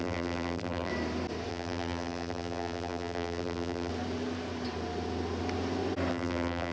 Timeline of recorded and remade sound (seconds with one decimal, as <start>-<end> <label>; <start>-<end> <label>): 0.0-0.9 remade; 0.9-1.5 recorded; 1.5-3.9 remade; 3.9-6.1 recorded; 6.1-6.7 remade